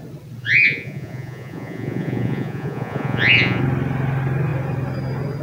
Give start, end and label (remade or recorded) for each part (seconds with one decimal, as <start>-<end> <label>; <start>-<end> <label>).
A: 0.0-0.4 recorded; 0.4-3.6 remade; 3.6-5.4 recorded